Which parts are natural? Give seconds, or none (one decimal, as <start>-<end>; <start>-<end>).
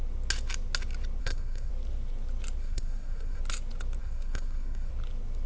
0.0-1.2; 1.7-2.6; 3.4-4.0; 4.9-5.5